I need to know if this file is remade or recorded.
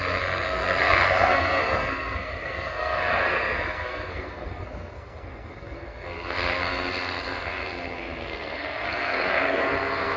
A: remade